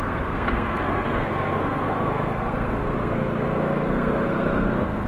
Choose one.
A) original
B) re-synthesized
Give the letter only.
B